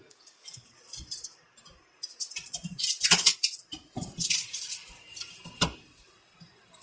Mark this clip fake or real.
fake